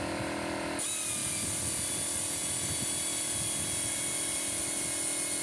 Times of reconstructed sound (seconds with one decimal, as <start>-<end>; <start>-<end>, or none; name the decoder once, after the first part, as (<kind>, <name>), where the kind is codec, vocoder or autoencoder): 1.2-2.0 (vocoder, BigVGAN v2); 2.4-4.6